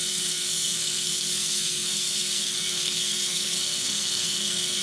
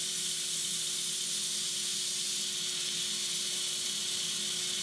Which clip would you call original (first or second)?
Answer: second